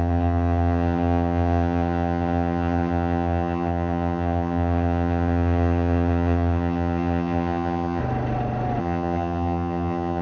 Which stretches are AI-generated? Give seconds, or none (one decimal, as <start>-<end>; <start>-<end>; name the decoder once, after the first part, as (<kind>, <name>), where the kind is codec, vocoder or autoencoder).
0.0-8.0 (vocoder, HiFi-GAN); 8.8-10.2